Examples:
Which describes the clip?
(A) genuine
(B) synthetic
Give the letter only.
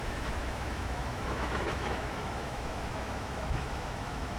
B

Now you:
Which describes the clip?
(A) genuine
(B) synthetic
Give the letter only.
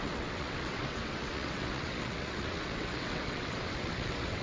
B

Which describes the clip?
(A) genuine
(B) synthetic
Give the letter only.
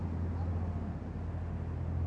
A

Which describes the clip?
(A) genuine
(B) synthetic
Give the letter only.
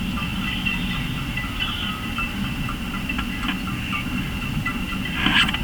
A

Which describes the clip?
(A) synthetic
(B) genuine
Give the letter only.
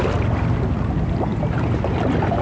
B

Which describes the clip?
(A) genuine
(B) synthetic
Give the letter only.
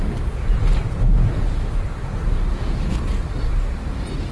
B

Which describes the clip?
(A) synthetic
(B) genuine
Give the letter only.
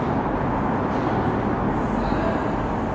B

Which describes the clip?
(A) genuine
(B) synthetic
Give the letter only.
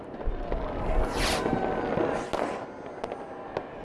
A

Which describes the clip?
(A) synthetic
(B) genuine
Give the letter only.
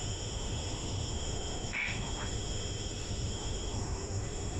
A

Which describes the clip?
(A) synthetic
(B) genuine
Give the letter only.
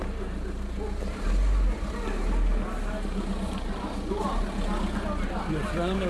B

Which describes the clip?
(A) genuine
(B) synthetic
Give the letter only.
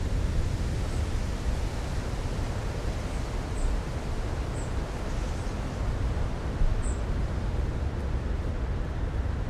A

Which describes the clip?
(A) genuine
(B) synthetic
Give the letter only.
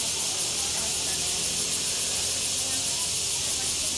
A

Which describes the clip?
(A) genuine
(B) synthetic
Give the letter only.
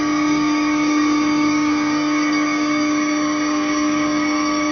B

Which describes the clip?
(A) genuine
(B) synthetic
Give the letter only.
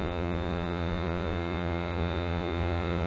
B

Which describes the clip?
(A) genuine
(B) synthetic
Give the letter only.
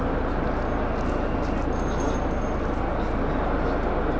A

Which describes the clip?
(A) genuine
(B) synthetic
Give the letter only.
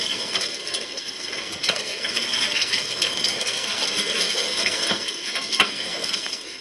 B